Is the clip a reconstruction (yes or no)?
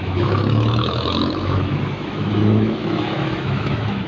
yes